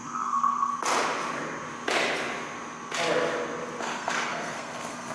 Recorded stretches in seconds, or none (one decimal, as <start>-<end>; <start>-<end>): 0.7-3.8